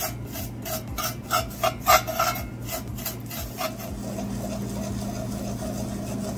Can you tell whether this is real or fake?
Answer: real